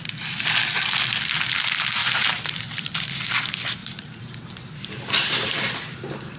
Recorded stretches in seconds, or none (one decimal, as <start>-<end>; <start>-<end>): 0.0-2.0; 2.6-3.8; 5.5-6.4